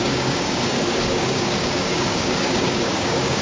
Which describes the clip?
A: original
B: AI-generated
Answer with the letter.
B